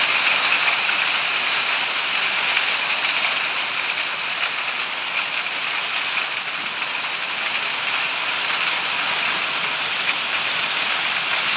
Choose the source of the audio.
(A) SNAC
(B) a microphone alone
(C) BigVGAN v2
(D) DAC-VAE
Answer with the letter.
B